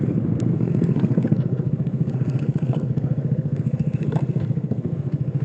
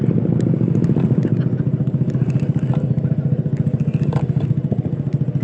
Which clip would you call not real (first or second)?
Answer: first